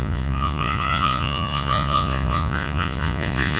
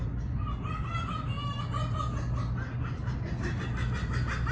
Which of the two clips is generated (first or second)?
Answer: first